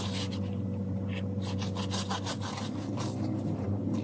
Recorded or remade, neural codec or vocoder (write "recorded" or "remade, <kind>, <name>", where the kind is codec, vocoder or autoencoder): recorded